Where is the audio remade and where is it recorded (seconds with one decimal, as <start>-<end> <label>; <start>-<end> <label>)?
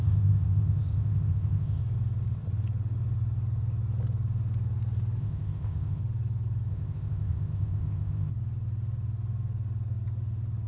0.0-1.8 remade; 1.8-5.2 recorded; 5.2-6.0 remade; 6.0-6.7 recorded; 6.7-8.3 remade; 8.3-10.7 recorded